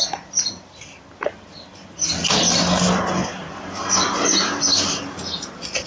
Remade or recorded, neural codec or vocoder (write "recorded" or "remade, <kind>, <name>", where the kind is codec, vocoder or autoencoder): recorded